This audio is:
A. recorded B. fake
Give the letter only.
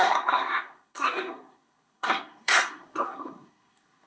B